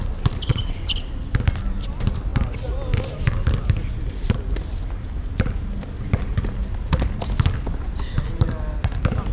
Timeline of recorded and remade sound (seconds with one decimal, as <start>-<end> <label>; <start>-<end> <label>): 0.0-9.3 recorded